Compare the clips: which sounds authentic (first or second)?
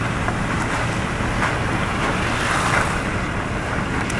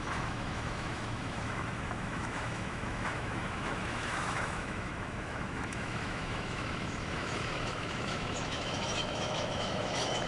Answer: first